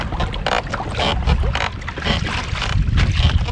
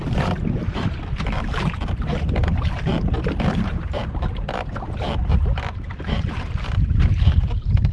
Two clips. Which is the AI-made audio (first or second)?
second